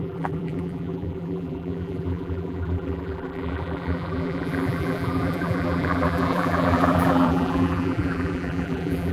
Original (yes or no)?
no